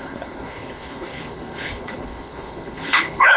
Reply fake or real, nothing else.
fake